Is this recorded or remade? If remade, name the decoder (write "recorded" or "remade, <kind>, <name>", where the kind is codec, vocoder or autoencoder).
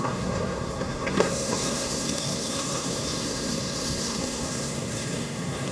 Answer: remade, codec, SNAC